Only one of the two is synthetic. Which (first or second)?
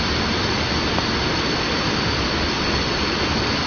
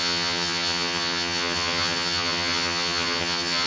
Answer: second